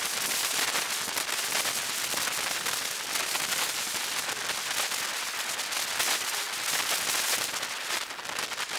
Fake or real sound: real